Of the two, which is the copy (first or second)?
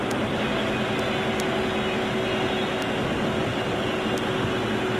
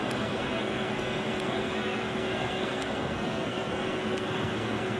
second